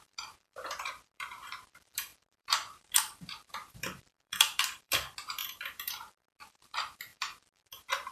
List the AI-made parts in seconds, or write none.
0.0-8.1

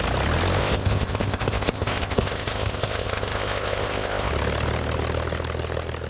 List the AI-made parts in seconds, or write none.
0.6-4.3

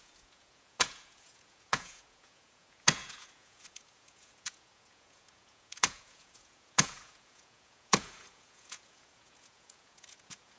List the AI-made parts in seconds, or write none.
0.0-10.6

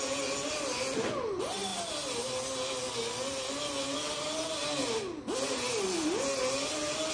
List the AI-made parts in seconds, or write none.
none

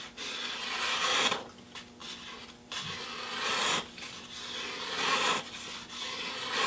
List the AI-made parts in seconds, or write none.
none

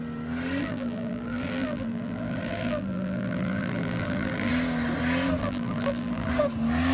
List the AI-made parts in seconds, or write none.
0.6-4.5; 5.4-6.3